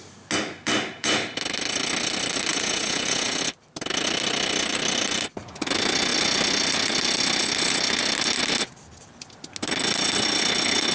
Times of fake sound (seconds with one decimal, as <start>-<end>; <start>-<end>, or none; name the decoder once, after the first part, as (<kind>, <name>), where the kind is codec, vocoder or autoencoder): 2.5-3.4 (vocoder, Vocos)